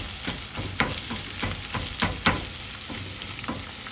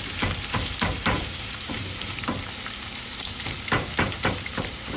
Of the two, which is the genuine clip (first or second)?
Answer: first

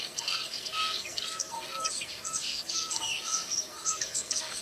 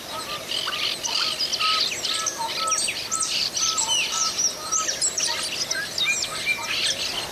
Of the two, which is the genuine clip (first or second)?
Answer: second